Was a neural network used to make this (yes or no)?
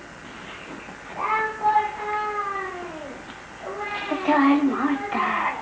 no